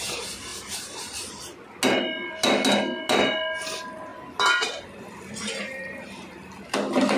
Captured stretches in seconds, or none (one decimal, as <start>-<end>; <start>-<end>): 0.0-7.2